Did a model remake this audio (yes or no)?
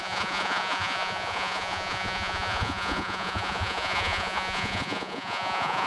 yes